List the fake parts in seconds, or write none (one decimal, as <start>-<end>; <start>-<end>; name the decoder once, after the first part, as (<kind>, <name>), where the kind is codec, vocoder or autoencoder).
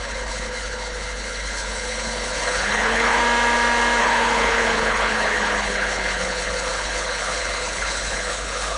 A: 0.0-3.2 (codec, HILCodec); 4.0-8.8